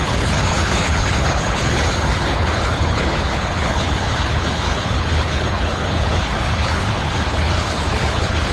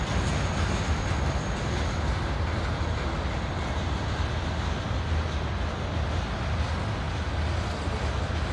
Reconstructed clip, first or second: first